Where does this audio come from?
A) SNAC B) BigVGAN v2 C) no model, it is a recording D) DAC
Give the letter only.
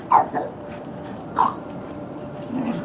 B